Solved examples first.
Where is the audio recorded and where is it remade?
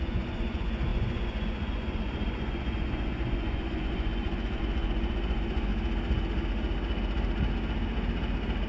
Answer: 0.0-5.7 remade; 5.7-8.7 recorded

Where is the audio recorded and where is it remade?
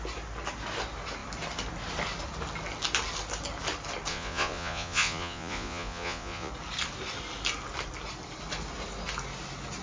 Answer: 0.0-4.1 recorded; 4.1-6.5 remade; 6.5-9.8 recorded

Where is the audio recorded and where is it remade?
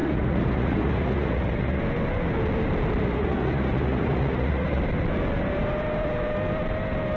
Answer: 0.0-1.8 remade; 1.8-3.0 recorded; 3.0-4.8 remade; 4.8-7.2 recorded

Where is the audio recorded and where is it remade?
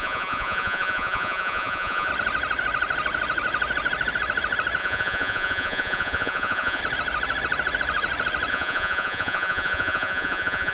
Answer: 0.0-2.1 remade; 2.1-4.8 recorded; 4.8-6.8 remade; 6.8-8.5 recorded; 8.5-10.7 remade